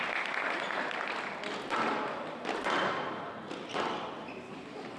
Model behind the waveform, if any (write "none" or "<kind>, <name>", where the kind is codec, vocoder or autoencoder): none